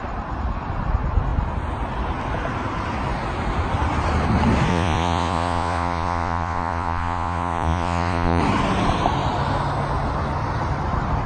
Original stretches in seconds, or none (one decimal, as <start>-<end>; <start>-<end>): 0.0-4.7; 8.4-11.3